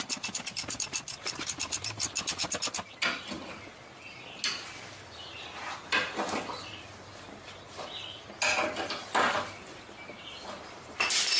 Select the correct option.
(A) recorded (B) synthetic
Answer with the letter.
A